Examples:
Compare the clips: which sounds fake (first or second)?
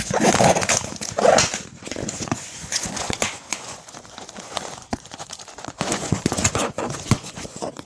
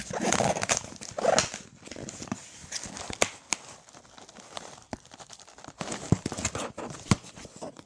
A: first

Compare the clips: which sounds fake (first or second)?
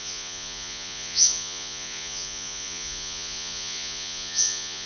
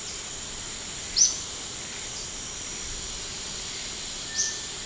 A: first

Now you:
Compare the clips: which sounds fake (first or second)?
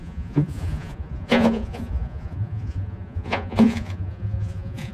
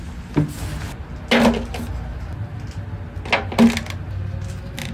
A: first